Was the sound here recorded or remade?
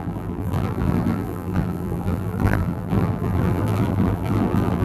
remade